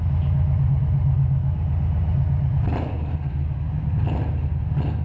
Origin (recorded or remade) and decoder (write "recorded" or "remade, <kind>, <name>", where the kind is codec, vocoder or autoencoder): recorded